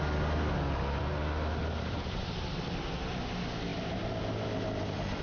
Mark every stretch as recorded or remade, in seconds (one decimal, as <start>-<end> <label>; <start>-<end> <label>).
0.0-5.2 recorded